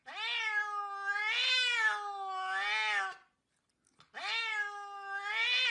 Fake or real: real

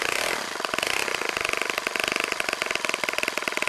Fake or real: real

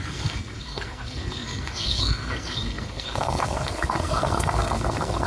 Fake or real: fake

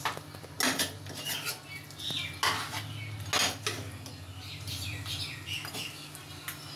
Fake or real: real